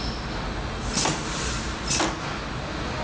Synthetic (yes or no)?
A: no